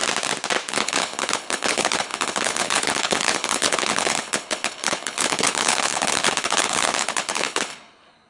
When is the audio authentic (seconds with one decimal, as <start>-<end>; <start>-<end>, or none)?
0.0-0.7